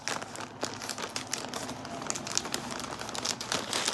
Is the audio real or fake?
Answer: real